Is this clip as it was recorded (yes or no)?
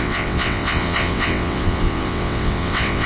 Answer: no